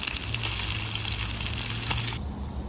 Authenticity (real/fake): real